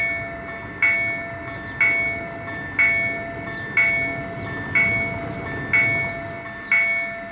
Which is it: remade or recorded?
recorded